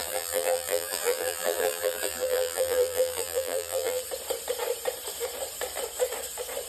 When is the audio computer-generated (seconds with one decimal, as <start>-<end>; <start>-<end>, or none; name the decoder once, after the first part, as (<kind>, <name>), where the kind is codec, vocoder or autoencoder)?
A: 0.0-4.0 (vocoder, BigVGAN v2)